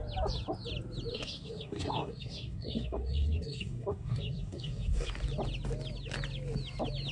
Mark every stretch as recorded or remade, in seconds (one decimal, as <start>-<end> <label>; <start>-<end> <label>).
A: 0.0-1.1 recorded; 1.1-5.1 remade; 5.1-7.1 recorded